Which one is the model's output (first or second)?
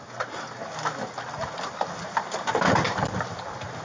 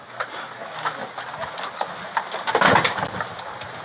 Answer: first